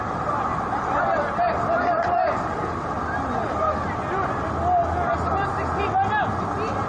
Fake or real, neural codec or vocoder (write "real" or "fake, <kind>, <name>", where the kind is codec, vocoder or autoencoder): real